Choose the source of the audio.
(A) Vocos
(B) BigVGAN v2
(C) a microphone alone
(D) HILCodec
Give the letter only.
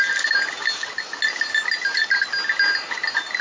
C